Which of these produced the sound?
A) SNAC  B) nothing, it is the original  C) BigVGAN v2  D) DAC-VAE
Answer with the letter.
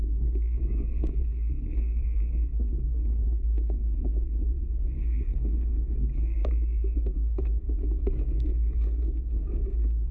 A